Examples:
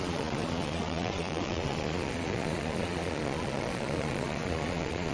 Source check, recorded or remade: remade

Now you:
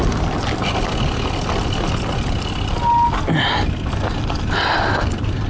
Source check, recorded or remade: recorded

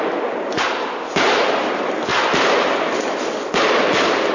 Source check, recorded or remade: recorded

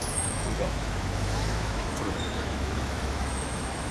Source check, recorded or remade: remade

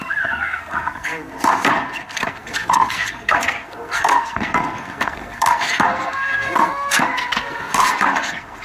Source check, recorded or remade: remade